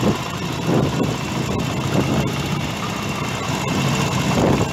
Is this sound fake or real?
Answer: real